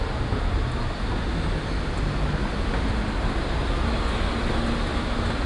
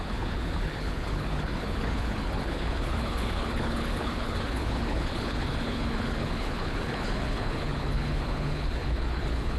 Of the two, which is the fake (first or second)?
second